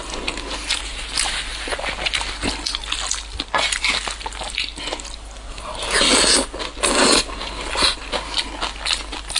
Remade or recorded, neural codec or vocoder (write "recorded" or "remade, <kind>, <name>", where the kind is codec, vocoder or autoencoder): recorded